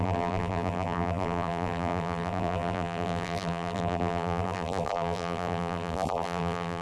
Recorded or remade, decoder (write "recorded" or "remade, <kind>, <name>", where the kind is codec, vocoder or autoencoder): remade, vocoder, BigVGAN v2